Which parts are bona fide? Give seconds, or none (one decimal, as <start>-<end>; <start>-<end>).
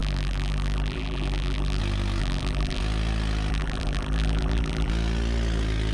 1.8-2.2; 2.8-3.5; 4.9-5.9